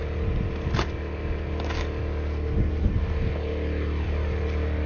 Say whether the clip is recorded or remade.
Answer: recorded